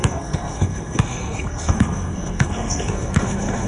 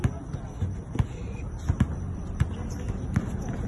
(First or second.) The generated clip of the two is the first